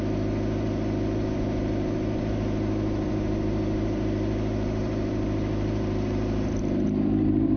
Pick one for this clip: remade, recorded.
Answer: remade